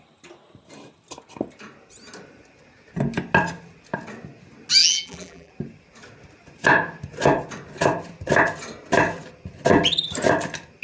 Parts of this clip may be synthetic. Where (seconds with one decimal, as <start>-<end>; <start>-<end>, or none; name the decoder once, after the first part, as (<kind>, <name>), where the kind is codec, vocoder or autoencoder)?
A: 4.8-5.5 (vocoder, BigVGAN v2)